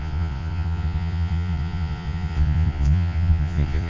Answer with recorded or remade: remade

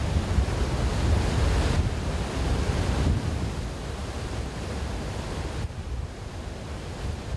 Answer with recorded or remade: recorded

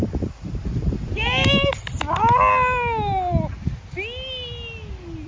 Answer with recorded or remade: recorded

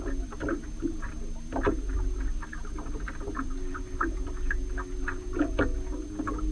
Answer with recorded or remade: recorded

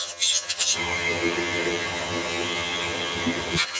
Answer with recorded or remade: remade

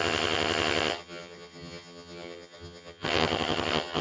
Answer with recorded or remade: remade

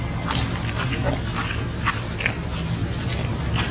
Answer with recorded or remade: recorded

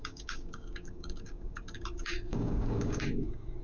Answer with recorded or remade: remade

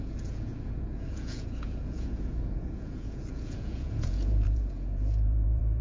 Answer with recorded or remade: remade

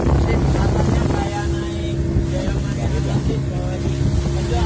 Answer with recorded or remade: recorded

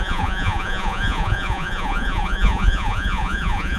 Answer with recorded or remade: remade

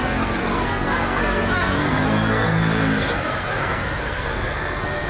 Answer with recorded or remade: remade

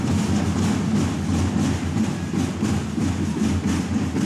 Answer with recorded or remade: recorded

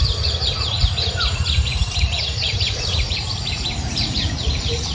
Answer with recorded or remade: remade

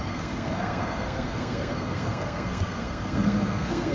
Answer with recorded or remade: remade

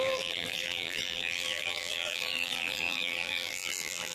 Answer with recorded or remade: remade